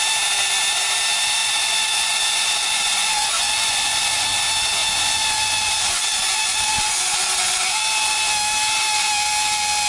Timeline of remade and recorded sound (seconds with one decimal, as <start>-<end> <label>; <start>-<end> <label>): 0.0-1.4 recorded; 1.4-4.2 remade; 4.2-4.8 recorded; 4.8-8.1 remade; 8.1-9.9 recorded